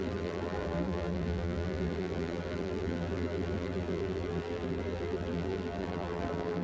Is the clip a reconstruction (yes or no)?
yes